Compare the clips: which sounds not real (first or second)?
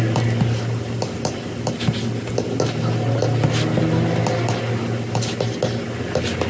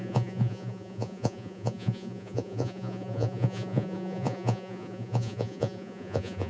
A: second